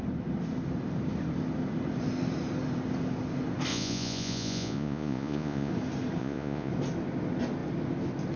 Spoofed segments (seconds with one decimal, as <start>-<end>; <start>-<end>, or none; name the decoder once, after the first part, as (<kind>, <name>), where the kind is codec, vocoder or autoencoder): 3.7-5.7 (vocoder, Vocos); 6.2-6.7